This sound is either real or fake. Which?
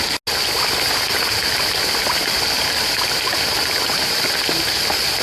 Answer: real